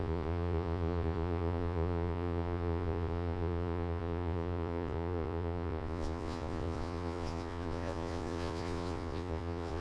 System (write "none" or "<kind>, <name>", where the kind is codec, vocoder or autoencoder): vocoder, Vocos